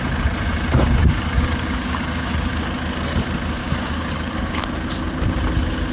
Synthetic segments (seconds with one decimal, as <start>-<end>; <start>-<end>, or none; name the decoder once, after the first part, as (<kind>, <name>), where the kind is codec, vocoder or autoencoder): 1.0-2.6 (codec, DAC); 3.6-4.6